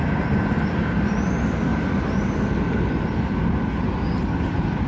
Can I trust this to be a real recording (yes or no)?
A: yes